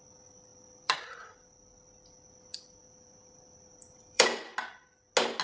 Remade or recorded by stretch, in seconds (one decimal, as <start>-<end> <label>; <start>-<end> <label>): 0.0-0.5 recorded; 0.5-1.9 remade; 1.9-2.8 recorded; 2.8-4.4 remade; 4.4-5.4 recorded